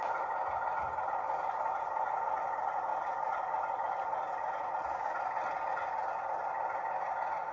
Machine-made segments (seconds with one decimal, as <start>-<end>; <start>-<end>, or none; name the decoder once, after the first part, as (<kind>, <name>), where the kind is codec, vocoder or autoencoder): none